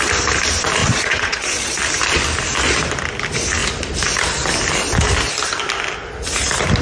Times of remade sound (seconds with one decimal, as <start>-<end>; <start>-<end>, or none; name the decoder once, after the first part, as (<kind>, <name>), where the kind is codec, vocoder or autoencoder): 0.8-1.8 (vocoder, WaveNeXt)